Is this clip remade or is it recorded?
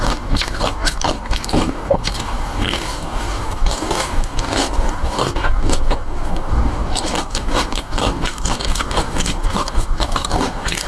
remade